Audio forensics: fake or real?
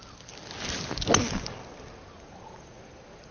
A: real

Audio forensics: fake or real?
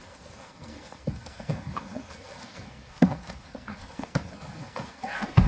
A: fake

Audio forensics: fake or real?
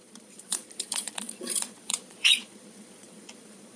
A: fake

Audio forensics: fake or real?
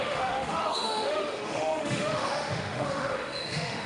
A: fake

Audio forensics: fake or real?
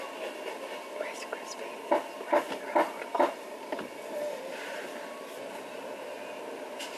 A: real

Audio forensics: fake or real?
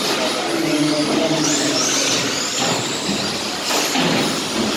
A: real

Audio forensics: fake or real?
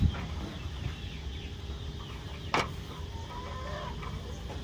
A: real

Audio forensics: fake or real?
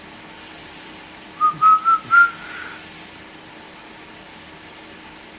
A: real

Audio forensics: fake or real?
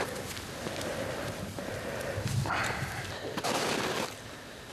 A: real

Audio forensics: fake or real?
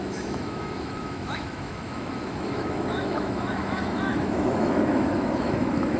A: fake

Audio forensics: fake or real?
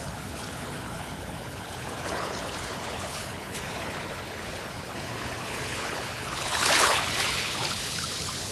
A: fake